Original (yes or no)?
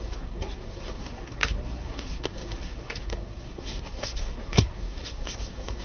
no